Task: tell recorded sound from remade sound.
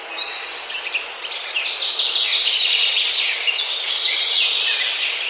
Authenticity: recorded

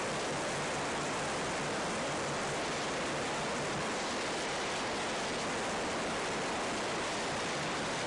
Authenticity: recorded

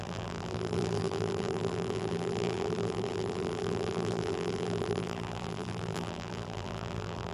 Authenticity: remade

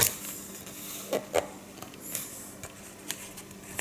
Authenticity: recorded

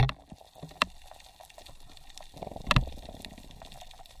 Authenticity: recorded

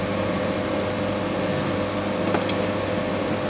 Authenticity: recorded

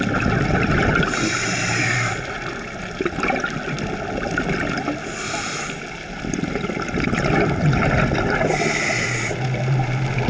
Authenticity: recorded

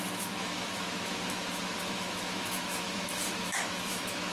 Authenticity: remade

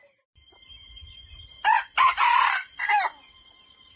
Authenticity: recorded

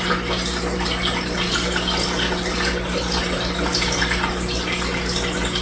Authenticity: recorded